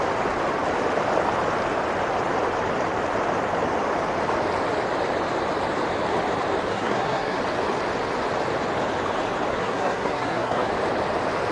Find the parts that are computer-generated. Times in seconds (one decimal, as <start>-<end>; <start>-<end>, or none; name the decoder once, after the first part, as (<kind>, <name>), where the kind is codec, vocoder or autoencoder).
6.7-7.4 (codec, SNAC); 9.5-10.7